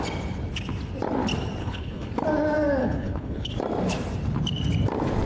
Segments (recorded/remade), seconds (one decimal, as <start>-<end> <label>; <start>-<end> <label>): 0.0-1.6 recorded; 1.6-2.1 remade; 2.1-2.8 recorded; 2.8-3.5 remade; 3.5-5.3 recorded